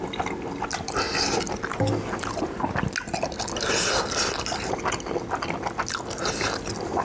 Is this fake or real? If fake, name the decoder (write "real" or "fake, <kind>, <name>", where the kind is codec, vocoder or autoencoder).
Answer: real